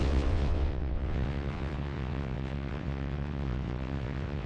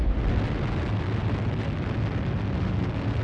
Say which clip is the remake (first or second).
first